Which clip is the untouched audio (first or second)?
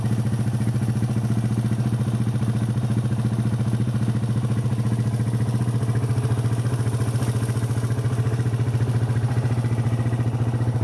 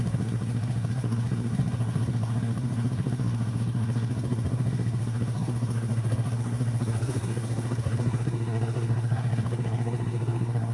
first